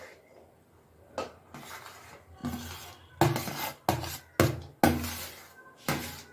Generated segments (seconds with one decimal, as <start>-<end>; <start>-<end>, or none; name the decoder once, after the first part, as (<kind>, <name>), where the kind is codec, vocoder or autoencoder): none